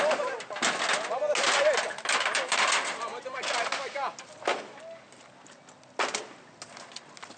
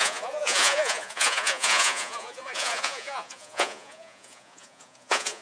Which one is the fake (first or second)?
second